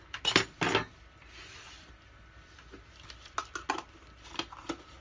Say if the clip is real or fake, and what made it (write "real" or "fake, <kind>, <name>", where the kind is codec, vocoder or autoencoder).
real